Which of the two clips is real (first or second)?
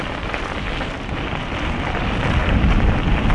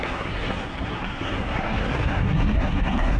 first